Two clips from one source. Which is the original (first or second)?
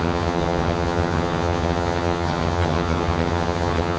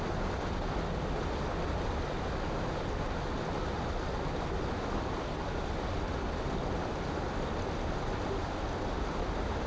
second